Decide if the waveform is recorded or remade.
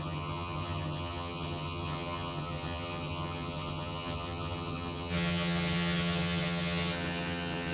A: remade